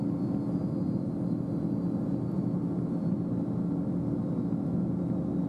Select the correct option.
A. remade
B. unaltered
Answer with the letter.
B